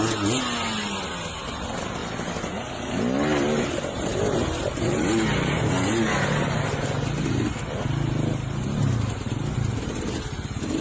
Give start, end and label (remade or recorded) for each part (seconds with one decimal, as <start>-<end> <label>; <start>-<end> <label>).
0.0-10.8 recorded

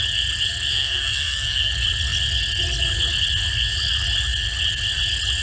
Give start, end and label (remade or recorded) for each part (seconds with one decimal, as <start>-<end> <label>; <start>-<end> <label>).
0.0-0.7 recorded; 0.7-1.7 remade; 1.7-5.4 recorded

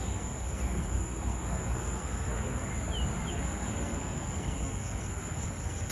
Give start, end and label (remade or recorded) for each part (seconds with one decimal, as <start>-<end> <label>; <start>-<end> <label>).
0.0-2.7 remade; 2.7-3.3 recorded; 3.3-5.9 remade

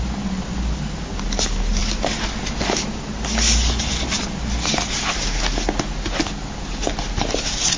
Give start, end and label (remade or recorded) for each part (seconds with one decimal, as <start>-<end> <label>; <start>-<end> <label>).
0.0-7.8 recorded

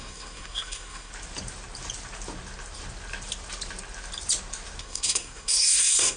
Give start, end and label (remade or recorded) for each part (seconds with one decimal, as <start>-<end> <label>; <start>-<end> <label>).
0.0-1.1 remade; 1.1-4.8 recorded; 4.8-6.2 remade

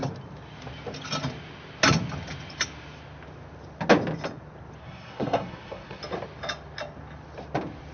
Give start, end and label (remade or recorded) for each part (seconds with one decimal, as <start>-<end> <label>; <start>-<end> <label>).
0.0-4.8 recorded; 4.8-6.0 remade; 6.0-7.9 recorded

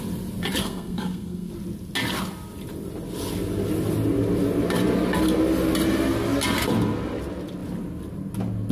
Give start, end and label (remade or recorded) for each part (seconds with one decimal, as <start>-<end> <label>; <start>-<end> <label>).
0.0-0.6 recorded; 0.6-1.5 remade; 1.5-8.7 recorded

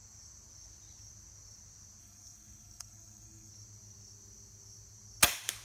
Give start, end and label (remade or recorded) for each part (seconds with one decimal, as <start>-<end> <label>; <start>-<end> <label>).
0.0-2.0 recorded; 2.0-3.5 remade; 3.5-5.6 recorded